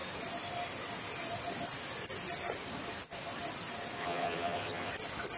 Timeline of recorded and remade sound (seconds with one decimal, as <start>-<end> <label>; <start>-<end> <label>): 0.0-4.0 recorded; 4.0-4.9 remade; 4.9-5.4 recorded